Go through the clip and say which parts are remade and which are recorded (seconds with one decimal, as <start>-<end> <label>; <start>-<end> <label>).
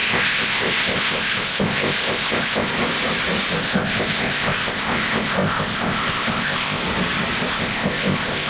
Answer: 0.0-2.7 remade; 2.7-3.6 recorded; 3.6-6.8 remade; 6.8-7.5 recorded; 7.5-8.5 remade